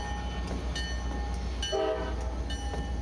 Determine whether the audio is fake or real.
real